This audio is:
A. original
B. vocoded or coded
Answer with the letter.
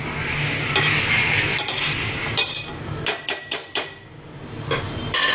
A